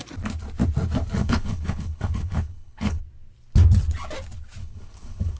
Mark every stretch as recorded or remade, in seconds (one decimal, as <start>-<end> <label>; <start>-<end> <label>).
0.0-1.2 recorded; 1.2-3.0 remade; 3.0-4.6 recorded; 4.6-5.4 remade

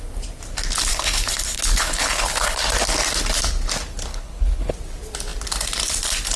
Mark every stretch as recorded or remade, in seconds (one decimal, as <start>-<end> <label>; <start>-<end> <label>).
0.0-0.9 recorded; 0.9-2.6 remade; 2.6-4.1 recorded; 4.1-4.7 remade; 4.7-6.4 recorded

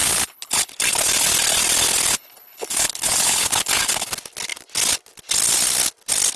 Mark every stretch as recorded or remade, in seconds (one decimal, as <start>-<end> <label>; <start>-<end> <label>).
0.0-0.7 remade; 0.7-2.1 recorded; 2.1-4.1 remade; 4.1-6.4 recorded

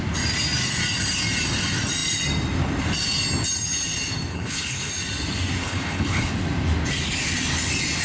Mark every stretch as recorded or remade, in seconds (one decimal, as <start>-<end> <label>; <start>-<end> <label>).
0.0-4.3 recorded; 4.3-4.9 remade; 4.9-5.6 recorded; 5.6-6.3 remade; 6.3-8.0 recorded

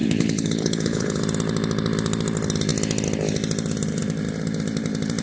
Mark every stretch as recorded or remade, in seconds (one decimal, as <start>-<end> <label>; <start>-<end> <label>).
0.0-1.2 remade; 1.2-5.2 recorded

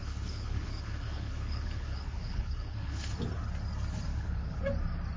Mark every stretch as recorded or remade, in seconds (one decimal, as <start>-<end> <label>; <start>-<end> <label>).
0.0-3.1 remade; 3.1-4.1 recorded; 4.1-4.6 remade; 4.6-5.2 recorded